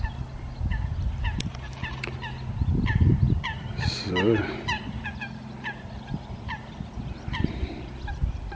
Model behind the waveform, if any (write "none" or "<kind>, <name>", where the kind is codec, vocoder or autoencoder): vocoder, BigVGAN v2